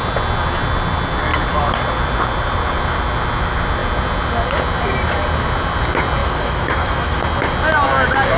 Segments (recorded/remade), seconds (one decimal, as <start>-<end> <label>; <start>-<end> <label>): 0.0-6.2 recorded; 6.2-7.2 remade; 7.2-8.4 recorded